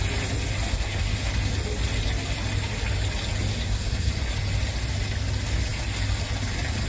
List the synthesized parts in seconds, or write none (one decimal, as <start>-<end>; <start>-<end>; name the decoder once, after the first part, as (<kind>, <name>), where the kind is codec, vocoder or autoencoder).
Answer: 0.7-1.3 (codec, SNAC); 3.5-4.1